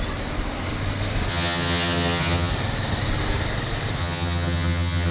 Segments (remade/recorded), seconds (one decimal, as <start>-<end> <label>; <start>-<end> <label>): 0.0-1.3 recorded; 1.3-2.5 remade; 2.5-4.0 recorded; 4.0-5.1 remade